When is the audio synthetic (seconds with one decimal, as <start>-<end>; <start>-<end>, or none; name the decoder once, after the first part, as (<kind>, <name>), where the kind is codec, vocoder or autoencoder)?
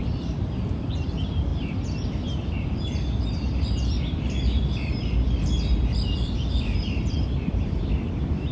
0.0-1.5 (vocoder, BigVGAN v2); 2.8-8.5